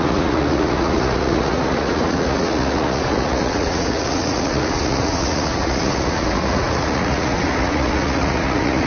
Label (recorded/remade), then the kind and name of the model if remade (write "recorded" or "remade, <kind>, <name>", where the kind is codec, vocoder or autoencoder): remade, vocoder, Vocos